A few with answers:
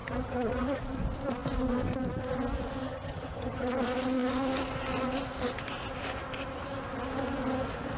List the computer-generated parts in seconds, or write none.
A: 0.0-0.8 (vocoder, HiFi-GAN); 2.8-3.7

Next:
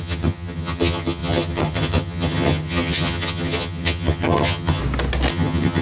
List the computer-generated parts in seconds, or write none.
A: 0.0-4.8 (vocoder, HiFi-GAN); 5.3-5.8